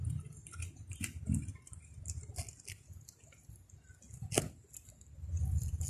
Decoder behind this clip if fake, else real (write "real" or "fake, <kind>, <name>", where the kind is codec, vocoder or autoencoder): real